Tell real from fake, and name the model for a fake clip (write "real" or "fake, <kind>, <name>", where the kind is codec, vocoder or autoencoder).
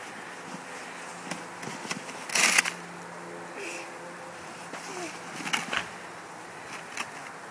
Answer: real